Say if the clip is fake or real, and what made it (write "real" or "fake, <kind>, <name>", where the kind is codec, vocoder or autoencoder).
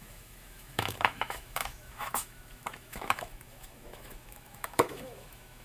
fake, autoencoder, DAC-VAE